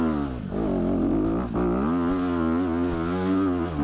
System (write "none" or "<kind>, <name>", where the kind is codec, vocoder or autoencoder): none